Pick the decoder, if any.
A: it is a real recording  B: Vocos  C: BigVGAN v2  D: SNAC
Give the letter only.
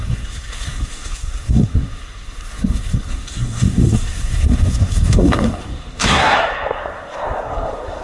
D